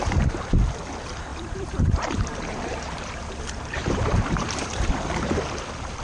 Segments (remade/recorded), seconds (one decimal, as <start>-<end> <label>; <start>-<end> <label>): 0.0-1.3 recorded; 1.3-4.9 remade; 4.9-6.0 recorded